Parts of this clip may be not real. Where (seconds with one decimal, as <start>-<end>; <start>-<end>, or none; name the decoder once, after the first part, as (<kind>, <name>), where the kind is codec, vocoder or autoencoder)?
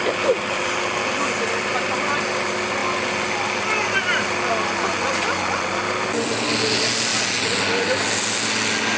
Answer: none